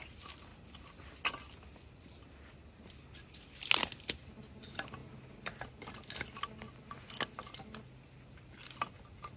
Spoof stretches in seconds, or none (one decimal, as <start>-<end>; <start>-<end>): none